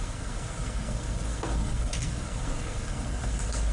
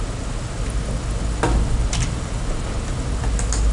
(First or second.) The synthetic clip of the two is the first